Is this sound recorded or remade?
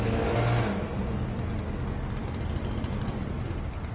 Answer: recorded